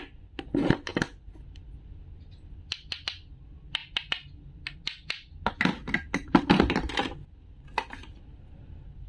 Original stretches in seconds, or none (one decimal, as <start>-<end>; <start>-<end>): 0.0-9.1